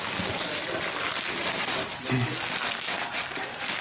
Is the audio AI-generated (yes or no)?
no